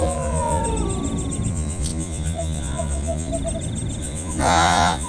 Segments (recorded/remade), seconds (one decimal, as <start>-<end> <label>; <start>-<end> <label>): 0.0-0.6 remade; 0.6-1.5 recorded; 1.5-3.3 remade; 3.3-4.0 recorded; 4.0-5.1 remade